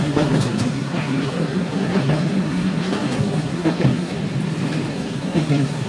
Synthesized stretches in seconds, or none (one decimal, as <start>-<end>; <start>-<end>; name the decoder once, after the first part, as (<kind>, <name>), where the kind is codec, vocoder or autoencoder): 0.0-4.2 (codec, SNAC); 4.9-5.9